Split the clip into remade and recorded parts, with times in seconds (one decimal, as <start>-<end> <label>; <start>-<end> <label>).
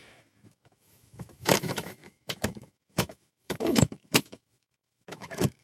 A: 0.0-5.6 remade